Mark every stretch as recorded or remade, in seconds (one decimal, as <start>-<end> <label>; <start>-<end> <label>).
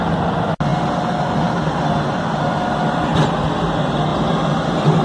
0.0-5.0 recorded